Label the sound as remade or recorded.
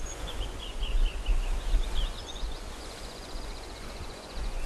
remade